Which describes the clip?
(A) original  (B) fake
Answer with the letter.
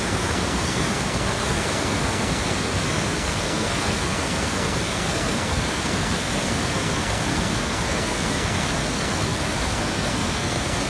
B